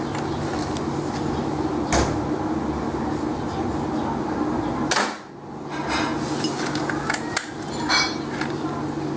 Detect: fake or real real